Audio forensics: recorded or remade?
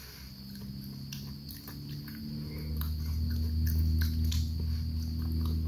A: recorded